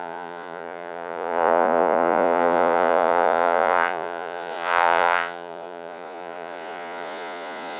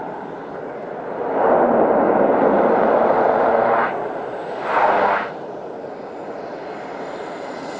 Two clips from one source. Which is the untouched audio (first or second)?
second